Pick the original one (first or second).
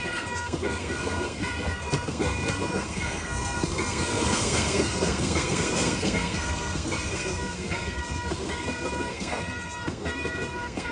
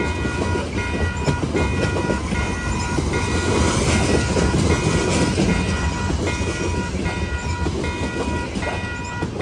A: second